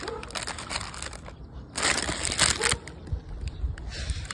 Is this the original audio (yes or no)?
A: yes